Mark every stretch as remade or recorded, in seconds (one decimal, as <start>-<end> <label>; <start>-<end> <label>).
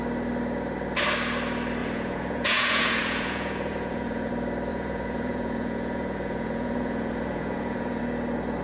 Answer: 0.0-1.8 recorded; 1.8-4.3 remade; 4.3-4.7 recorded; 4.7-8.0 remade; 8.0-8.6 recorded